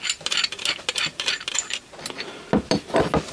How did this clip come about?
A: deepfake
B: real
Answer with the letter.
B